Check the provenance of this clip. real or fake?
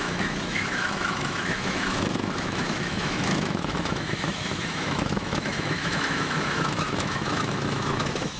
fake